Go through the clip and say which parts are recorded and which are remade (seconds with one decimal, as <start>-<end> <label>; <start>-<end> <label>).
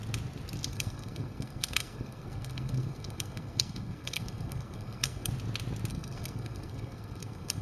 0.0-0.7 recorded; 0.7-5.3 remade; 5.3-5.9 recorded; 5.9-7.6 remade